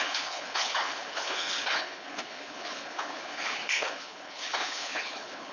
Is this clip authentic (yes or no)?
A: no